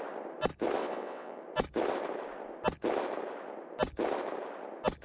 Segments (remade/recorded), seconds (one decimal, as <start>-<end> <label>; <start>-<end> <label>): 0.0-0.8 recorded; 0.8-1.4 remade; 1.4-5.0 recorded